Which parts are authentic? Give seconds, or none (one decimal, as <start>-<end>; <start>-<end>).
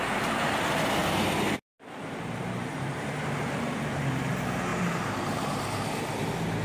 0.0-1.0; 4.3-4.7; 5.5-6.6